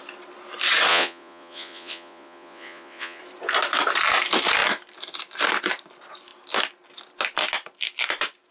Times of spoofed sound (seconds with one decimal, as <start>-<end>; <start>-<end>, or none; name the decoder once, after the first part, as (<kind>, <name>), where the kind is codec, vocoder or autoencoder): 0.9-3.2 (vocoder, Vocos)